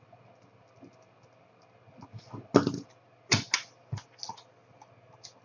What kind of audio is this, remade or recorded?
recorded